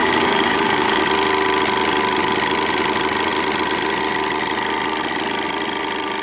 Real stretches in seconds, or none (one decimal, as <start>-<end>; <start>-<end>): 1.0-6.2